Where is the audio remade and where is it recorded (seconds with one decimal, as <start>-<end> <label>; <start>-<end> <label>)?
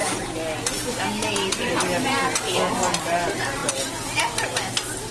0.0-5.1 recorded